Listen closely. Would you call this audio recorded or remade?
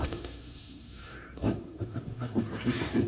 remade